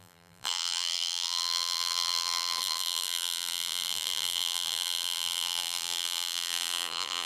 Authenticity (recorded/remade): remade